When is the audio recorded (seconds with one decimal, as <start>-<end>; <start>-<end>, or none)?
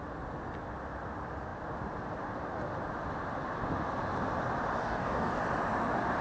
0.0-4.8; 5.4-6.2